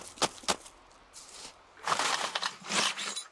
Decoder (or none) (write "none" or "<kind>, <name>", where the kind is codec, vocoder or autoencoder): none